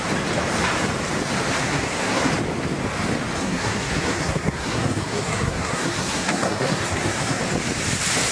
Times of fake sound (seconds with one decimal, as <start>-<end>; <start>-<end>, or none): 1.6-2.3; 3.4-7.4